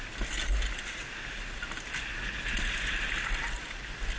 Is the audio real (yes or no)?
yes